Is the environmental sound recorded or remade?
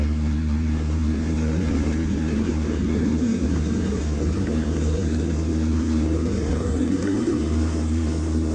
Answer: remade